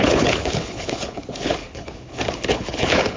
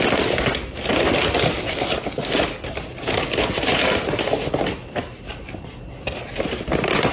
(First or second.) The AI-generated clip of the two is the first